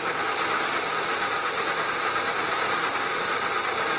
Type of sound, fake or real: fake